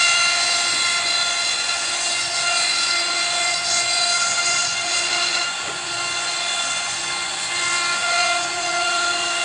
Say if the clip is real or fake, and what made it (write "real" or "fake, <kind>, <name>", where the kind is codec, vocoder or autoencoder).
fake, vocoder, Vocos